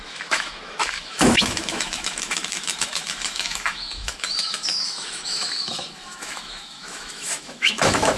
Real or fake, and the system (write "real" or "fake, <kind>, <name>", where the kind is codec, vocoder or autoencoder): fake, autoencoder, DAC-VAE